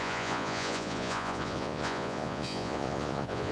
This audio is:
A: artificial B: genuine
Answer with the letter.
A